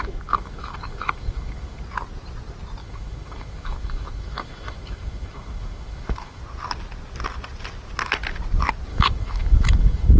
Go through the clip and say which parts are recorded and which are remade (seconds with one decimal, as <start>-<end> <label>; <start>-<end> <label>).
0.0-1.8 remade; 1.8-2.8 recorded; 2.8-6.4 remade; 6.4-8.9 recorded; 8.9-10.2 remade